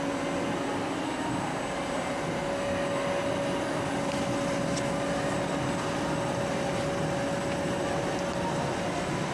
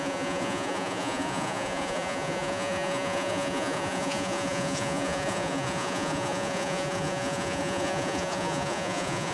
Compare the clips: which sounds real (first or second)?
first